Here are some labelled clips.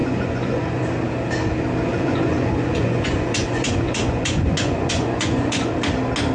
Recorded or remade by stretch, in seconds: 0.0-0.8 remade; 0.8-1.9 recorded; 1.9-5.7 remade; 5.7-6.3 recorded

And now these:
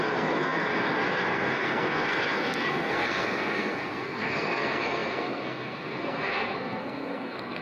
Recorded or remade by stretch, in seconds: 0.0-7.6 remade

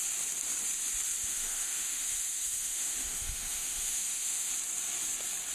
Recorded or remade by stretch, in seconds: 0.0-1.2 recorded; 1.2-4.5 remade; 4.5-5.5 recorded

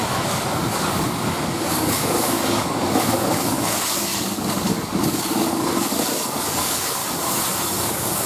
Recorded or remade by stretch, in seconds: 0.0-7.0 remade; 7.0-7.8 recorded; 7.8-8.3 remade

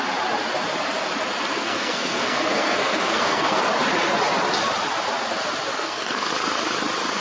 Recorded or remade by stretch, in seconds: 0.0-1.5 recorded; 1.5-3.7 remade; 3.7-5.7 recorded; 5.7-6.3 remade; 6.3-7.2 recorded